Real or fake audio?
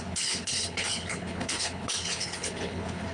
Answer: fake